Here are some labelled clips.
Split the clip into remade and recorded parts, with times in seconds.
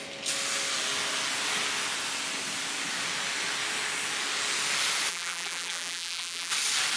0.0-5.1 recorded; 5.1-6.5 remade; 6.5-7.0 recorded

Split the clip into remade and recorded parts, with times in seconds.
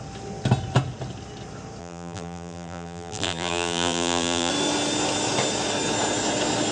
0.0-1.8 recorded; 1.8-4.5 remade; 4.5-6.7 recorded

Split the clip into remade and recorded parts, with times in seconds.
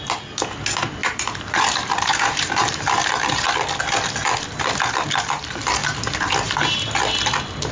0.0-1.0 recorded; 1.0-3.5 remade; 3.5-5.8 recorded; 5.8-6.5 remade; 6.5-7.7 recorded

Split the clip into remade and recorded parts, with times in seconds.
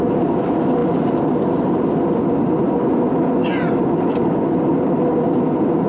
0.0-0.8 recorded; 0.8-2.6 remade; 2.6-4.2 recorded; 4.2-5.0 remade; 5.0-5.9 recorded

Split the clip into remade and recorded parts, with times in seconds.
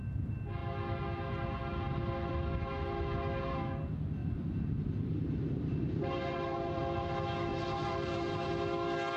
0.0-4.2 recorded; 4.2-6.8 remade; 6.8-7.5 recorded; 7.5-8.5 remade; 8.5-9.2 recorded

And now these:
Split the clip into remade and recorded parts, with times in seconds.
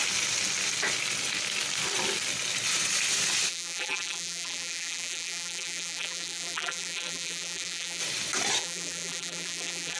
0.0-3.5 recorded; 3.5-8.0 remade; 8.0-8.6 recorded; 8.6-10.0 remade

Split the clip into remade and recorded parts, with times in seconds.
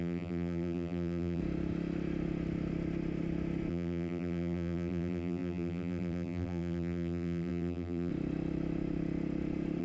0.0-1.4 remade; 1.4-3.7 recorded; 3.7-8.1 remade; 8.1-9.8 recorded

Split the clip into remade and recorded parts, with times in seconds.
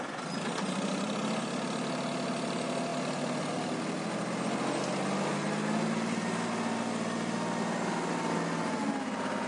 0.0-9.5 recorded